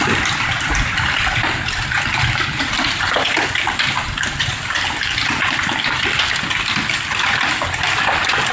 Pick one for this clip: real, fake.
real